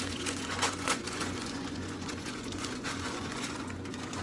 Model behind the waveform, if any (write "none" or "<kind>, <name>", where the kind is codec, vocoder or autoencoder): vocoder, Vocos